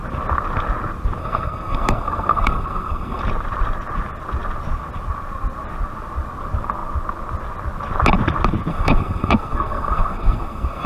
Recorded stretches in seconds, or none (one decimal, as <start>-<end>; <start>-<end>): 0.0-1.2; 3.2-8.7